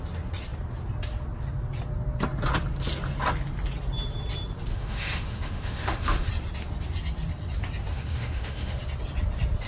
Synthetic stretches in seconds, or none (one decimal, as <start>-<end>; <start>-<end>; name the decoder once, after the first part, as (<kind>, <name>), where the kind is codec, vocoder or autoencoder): 4.7-6.3 (autoencoder, DAC-VAE); 7.9-8.8